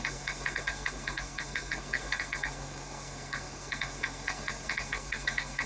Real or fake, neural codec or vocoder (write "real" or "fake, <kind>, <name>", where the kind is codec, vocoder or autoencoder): fake, codec, SNAC